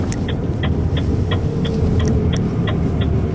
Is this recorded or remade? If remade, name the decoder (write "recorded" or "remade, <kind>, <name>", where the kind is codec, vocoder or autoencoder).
recorded